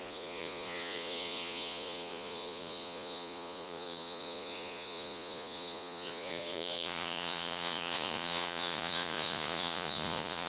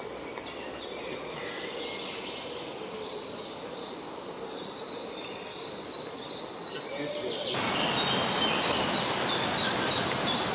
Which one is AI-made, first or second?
first